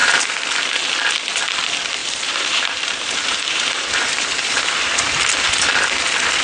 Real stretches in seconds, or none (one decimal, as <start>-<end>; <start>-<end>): 0.0-2.0; 5.2-6.4